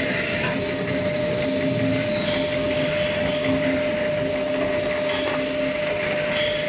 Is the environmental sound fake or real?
real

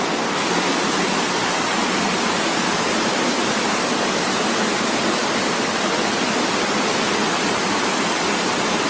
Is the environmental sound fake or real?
real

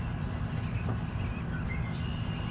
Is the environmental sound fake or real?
real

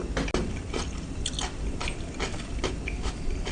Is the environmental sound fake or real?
real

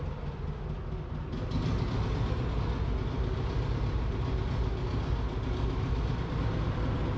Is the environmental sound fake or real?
real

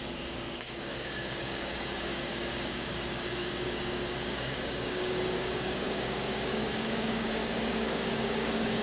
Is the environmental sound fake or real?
fake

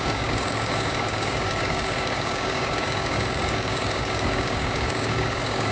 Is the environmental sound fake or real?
fake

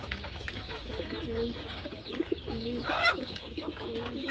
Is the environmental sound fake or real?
fake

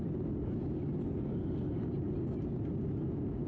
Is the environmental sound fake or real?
real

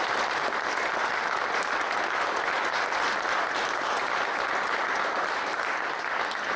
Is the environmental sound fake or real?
real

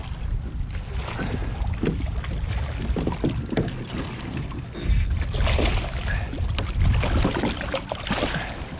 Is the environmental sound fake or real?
real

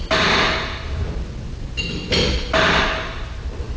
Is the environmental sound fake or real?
real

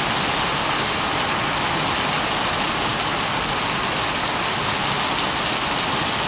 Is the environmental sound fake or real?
real